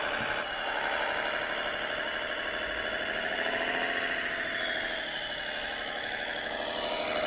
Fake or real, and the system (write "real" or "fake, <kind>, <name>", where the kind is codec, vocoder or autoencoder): real